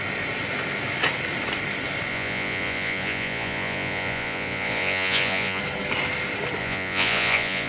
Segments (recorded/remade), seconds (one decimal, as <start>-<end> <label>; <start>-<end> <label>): 0.0-2.1 recorded; 2.1-5.6 remade; 5.6-6.6 recorded; 6.6-7.7 remade